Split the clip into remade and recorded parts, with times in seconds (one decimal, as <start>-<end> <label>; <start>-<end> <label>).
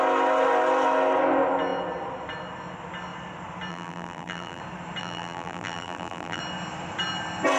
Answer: 0.0-3.7 recorded; 3.7-4.6 remade; 4.6-5.0 recorded; 5.0-6.4 remade; 6.4-7.6 recorded